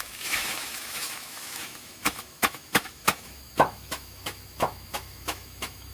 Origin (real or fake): fake